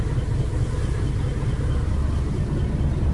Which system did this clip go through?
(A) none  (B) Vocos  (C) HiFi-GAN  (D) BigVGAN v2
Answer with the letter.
A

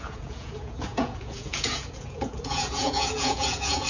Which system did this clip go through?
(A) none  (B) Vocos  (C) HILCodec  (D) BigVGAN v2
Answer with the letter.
B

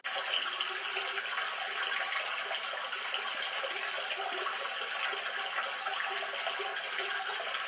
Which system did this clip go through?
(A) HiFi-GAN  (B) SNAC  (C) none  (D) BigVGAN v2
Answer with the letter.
C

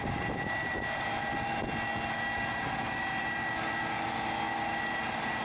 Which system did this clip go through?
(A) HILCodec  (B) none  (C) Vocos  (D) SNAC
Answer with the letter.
B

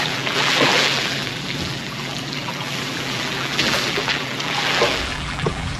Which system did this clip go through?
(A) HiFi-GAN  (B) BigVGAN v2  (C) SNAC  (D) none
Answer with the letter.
B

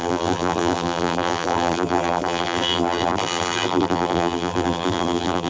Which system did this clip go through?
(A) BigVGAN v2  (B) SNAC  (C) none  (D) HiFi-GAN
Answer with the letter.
A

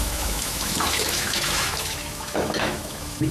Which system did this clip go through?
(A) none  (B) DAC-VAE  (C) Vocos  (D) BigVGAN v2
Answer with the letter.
B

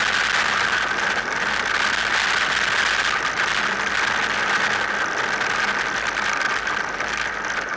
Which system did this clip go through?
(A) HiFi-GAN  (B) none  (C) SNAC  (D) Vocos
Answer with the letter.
B